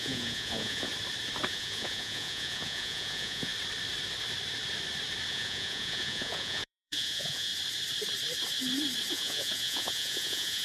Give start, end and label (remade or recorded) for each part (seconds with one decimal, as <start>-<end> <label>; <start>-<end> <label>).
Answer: 0.0-0.9 remade; 0.9-1.5 recorded; 1.5-3.5 remade; 3.5-5.3 recorded; 5.3-7.5 remade; 7.5-9.1 recorded; 9.1-10.6 remade